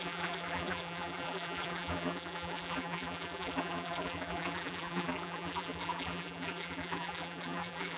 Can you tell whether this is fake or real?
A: fake